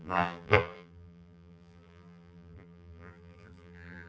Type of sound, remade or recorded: remade